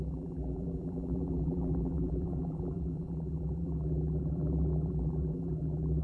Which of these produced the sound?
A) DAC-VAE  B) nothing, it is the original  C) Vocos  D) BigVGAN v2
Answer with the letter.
D